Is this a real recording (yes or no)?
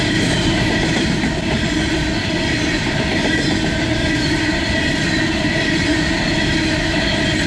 yes